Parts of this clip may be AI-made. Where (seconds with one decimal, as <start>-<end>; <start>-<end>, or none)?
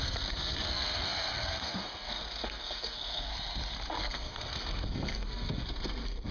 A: 0.0-3.3; 3.9-6.3